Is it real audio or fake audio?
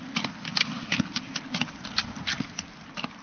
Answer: real